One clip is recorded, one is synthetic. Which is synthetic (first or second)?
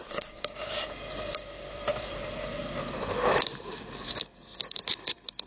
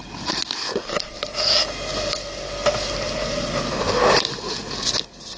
first